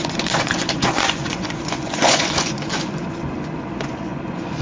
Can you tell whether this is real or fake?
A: fake